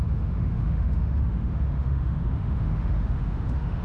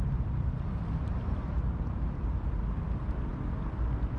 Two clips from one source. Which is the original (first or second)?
second